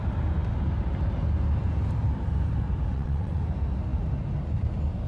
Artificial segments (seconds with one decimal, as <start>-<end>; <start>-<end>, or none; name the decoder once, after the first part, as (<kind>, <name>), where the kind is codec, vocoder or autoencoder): 2.9-3.4 (vocoder, WaveNeXt)